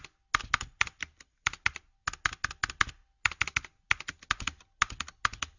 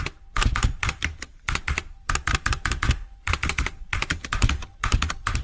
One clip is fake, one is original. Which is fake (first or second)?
second